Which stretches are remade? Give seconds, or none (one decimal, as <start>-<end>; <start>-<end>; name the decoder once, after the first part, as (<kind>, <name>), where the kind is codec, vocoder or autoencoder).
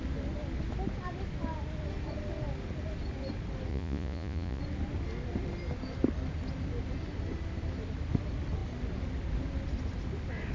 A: 3.7-4.6 (vocoder, Vocos)